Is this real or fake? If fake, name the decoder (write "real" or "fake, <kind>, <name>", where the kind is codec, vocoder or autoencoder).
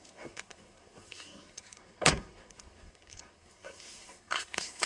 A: fake, codec, SNAC